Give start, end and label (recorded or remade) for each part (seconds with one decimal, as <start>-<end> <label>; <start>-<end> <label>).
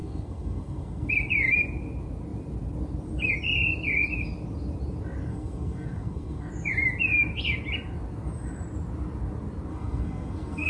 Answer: 0.0-1.1 remade; 1.1-5.3 recorded; 5.3-6.5 remade; 6.5-9.7 recorded; 9.7-10.7 remade